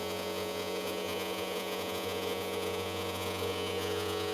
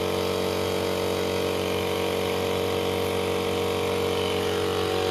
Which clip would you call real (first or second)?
second